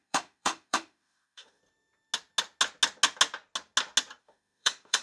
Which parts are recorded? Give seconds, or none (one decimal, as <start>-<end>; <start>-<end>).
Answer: 1.6-4.2